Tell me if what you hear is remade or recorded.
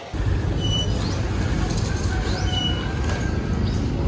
recorded